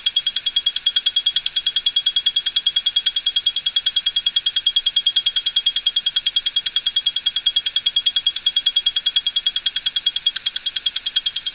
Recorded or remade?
recorded